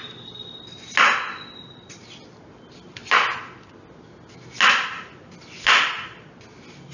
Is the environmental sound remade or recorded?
recorded